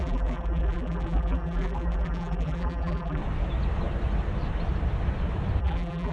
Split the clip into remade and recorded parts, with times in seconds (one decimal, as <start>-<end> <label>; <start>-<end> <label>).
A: 0.0-3.2 remade; 3.2-5.6 recorded; 5.6-6.1 remade